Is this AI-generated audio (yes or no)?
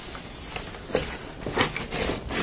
no